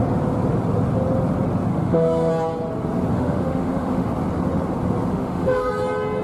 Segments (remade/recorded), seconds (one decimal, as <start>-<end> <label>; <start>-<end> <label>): 0.0-1.7 recorded; 1.7-2.3 remade; 2.3-3.1 recorded; 3.1-4.1 remade; 4.1-5.1 recorded; 5.1-5.7 remade; 5.7-6.2 recorded

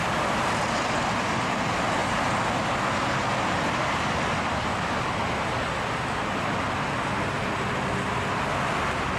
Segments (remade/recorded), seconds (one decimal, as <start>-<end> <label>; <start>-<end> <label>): 0.0-9.2 recorded

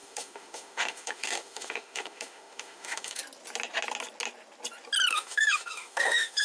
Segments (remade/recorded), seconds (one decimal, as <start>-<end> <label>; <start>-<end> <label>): 0.0-3.2 remade; 3.2-5.1 recorded; 5.1-6.4 remade

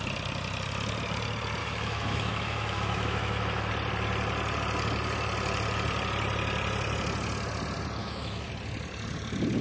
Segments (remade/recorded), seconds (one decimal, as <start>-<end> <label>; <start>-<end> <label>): 0.0-1.6 recorded; 1.6-3.7 remade; 3.7-8.0 recorded; 8.0-8.5 remade; 8.5-9.6 recorded